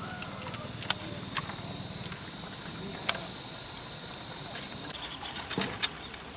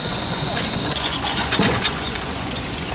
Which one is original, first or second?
first